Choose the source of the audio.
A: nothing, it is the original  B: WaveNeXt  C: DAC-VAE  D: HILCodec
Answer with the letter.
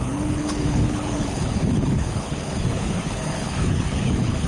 D